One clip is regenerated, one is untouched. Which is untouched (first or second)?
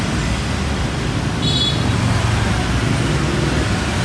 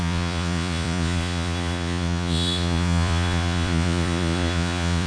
first